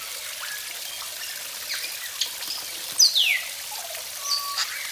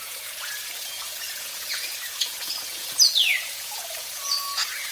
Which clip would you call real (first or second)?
first